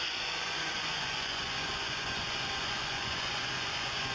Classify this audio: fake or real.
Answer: fake